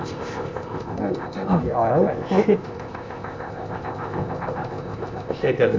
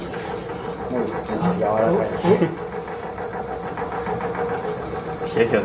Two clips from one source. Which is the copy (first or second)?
first